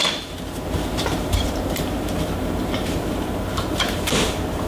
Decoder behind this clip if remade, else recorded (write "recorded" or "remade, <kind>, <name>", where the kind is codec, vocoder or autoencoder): remade, vocoder, BigVGAN v2